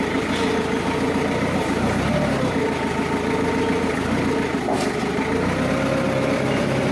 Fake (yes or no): no